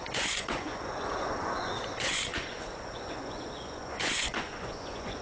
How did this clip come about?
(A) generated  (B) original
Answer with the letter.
A